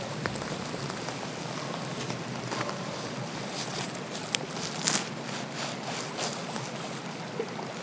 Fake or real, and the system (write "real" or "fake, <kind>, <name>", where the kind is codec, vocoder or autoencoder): real